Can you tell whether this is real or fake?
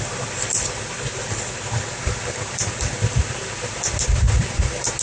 real